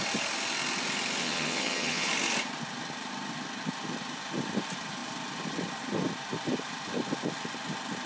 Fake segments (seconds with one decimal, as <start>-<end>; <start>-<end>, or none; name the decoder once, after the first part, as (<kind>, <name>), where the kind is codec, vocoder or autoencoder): 1.2-2.1 (vocoder, HiFi-GAN)